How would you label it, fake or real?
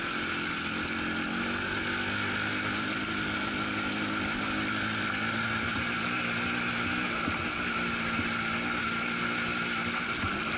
real